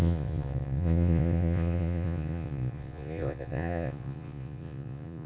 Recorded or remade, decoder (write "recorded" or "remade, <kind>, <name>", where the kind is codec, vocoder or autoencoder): remade, vocoder, Vocos